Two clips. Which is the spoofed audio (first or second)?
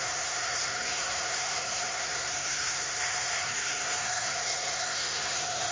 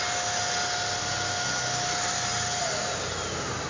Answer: first